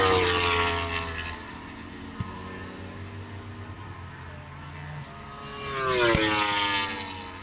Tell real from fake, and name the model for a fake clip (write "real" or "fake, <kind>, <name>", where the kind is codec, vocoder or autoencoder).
real